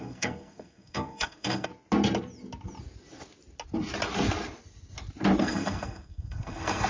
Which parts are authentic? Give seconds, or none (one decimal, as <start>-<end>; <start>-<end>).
1.7-5.4